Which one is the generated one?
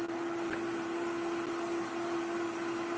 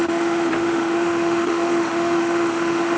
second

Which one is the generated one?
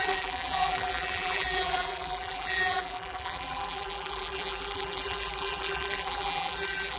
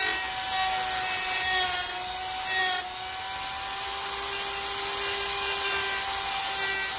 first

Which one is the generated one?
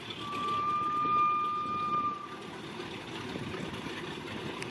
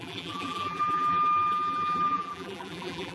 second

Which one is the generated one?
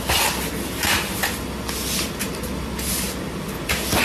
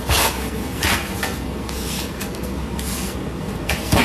second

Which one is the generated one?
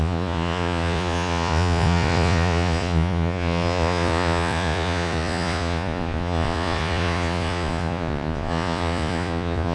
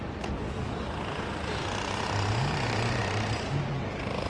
first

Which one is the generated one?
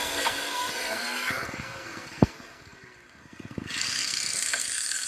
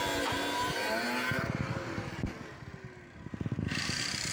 first